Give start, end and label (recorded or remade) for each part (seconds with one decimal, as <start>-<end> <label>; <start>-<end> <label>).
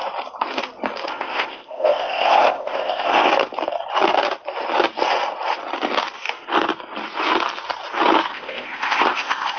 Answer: 0.0-1.1 recorded; 1.1-3.3 remade; 3.3-8.3 recorded; 8.3-9.6 remade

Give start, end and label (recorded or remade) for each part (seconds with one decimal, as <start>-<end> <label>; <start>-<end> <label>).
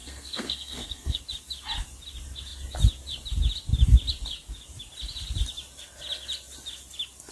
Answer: 0.0-1.2 remade; 1.2-7.3 recorded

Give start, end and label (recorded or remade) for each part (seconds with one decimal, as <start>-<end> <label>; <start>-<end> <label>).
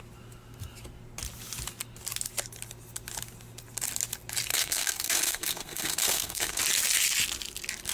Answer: 0.0-4.5 recorded; 4.5-6.6 remade; 6.6-7.9 recorded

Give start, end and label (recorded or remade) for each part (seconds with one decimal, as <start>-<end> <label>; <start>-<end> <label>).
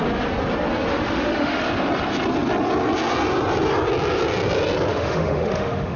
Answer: 0.0-0.9 recorded; 0.9-1.6 remade; 1.6-4.9 recorded; 4.9-6.0 remade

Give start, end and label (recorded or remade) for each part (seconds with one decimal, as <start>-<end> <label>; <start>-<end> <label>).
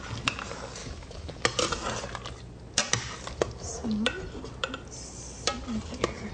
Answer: 0.0-0.8 recorded; 0.8-1.3 remade; 1.3-6.3 recorded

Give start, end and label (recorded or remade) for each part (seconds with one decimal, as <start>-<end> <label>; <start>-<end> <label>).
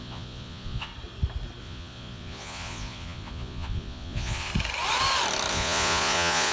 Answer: 0.0-0.9 remade; 0.9-1.6 recorded; 1.6-4.5 remade; 4.5-5.5 recorded; 5.5-6.5 remade